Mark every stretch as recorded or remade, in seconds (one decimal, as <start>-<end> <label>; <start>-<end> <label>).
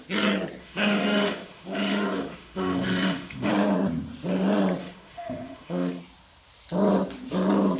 0.0-0.6 recorded; 0.6-3.5 remade; 3.5-4.8 recorded; 4.8-6.0 remade; 6.0-7.8 recorded